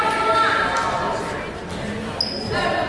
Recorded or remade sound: recorded